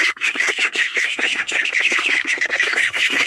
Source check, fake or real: fake